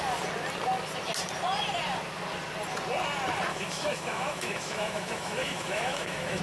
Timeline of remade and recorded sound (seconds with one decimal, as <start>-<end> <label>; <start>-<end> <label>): 0.0-3.5 recorded; 3.5-6.4 remade